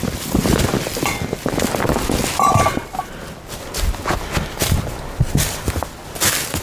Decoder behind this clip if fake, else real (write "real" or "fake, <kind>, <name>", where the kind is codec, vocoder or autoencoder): real